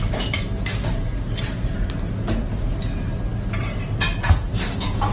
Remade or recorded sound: recorded